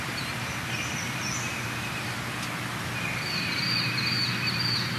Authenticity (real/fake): real